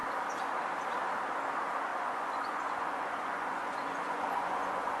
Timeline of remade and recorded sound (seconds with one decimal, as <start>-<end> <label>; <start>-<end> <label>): 0.0-1.9 recorded; 1.9-5.0 remade